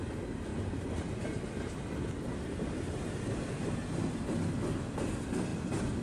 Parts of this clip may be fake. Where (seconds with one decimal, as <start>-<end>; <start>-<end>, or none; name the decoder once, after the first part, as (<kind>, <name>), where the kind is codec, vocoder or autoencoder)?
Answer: 0.5-3.7 (vocoder, BigVGAN v2); 5.5-6.0